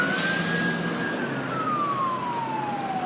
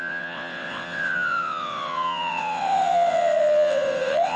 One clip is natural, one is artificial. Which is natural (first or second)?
first